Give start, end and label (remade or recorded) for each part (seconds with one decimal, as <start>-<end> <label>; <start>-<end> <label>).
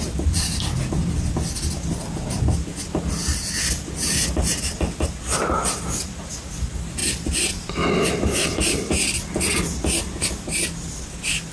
0.0-11.5 recorded